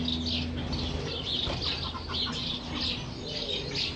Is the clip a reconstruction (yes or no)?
no